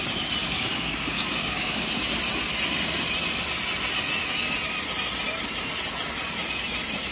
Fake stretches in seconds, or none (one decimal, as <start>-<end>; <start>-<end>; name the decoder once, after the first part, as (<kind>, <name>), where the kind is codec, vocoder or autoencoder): 0.4-1.9 (codec, DAC)